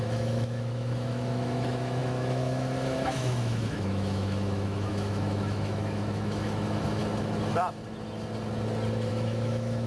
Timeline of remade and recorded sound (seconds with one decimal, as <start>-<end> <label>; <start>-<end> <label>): 0.0-7.0 remade; 7.0-9.1 recorded; 9.1-9.9 remade